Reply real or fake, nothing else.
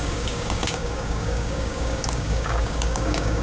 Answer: fake